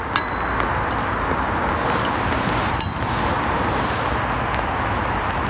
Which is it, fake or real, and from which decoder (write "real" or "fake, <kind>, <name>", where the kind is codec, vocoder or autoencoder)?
real